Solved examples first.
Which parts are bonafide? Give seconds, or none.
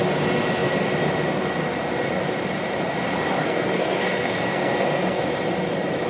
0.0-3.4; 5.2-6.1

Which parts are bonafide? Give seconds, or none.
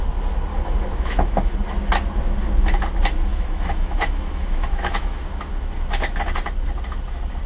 0.0-0.5; 1.5-3.3; 5.5-7.5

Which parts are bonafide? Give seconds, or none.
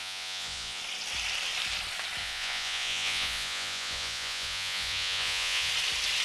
0.8-2.2; 5.7-6.2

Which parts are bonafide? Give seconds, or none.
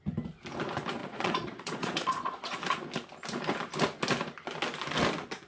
0.0-1.0; 2.6-5.5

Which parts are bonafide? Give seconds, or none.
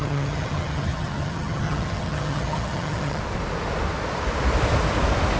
3.2-5.4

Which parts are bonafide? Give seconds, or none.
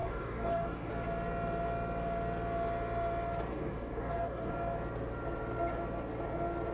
0.9-3.5; 4.5-6.7